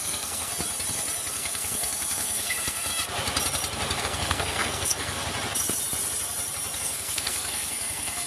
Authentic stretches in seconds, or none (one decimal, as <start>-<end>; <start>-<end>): 0.5-1.3; 2.9-4.0; 5.2-6.8